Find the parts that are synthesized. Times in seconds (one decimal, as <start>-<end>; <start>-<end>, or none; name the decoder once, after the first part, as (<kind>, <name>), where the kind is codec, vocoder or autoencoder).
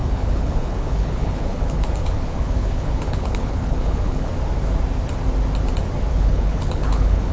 0.0-4.3 (codec, HILCodec); 6.1-7.3